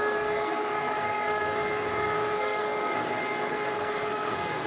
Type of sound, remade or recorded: remade